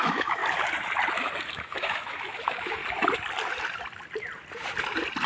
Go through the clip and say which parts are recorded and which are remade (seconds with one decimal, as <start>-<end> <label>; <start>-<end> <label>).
0.0-0.4 remade; 0.4-1.5 recorded; 1.5-2.8 remade; 2.8-5.3 recorded